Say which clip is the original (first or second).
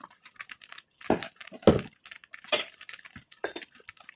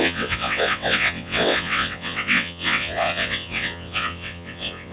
first